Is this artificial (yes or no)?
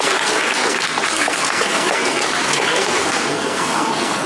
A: yes